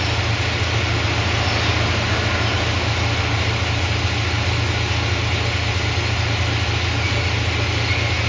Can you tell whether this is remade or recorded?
recorded